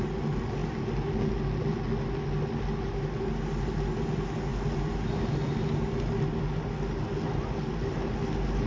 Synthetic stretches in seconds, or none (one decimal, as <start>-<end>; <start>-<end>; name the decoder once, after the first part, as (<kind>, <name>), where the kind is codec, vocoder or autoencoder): none

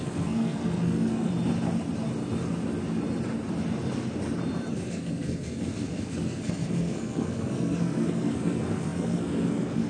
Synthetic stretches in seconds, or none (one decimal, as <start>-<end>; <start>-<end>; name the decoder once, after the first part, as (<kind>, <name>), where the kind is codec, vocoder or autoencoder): 0.0-1.3 (codec, SNAC); 4.7-9.9

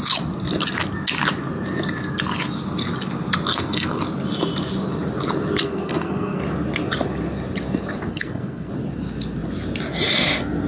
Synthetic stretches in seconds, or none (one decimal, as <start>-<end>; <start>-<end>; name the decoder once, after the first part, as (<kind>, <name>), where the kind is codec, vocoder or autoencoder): 3.5-4.0 (codec, SNAC); 5.6-6.4; 8.1-8.7

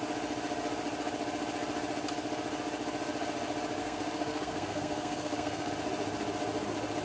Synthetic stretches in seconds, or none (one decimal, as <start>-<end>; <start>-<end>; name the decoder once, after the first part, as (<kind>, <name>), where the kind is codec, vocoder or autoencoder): 3.8-5.7 (codec, SNAC)

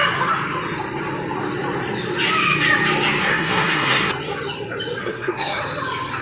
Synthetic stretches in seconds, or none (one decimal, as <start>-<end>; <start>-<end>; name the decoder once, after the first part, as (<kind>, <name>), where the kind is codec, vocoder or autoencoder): 3.2-4.1 (codec, SNAC); 5.0-5.6

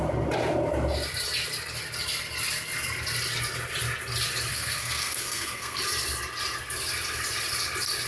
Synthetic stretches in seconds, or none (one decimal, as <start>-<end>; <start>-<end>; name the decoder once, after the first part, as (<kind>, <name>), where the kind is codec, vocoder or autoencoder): 4.5-5.8 (codec, SNAC)

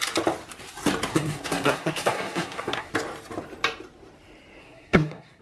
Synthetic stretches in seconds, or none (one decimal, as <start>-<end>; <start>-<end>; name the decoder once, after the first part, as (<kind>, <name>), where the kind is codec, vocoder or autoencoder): 1.1-2.9 (codec, SNAC); 4.6-5.4